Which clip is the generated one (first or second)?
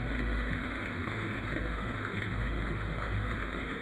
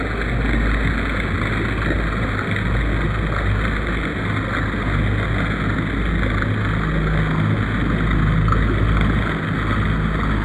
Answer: first